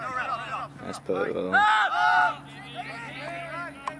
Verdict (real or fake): real